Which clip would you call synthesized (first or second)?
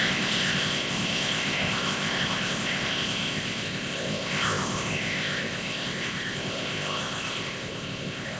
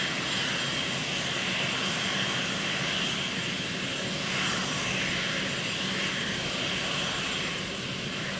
first